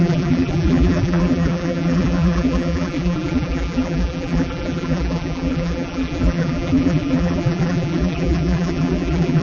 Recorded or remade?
remade